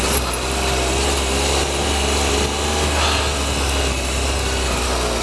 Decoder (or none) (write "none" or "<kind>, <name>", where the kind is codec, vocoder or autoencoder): none